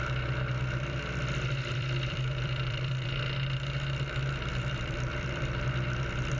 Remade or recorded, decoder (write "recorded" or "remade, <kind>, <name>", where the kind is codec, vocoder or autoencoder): remade, vocoder, BigVGAN v2